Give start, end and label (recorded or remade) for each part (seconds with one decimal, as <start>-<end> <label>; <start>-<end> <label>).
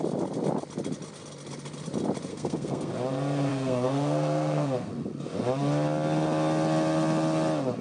0.0-2.3 recorded; 2.3-2.9 remade; 2.9-3.5 recorded; 3.5-4.9 remade; 4.9-7.8 recorded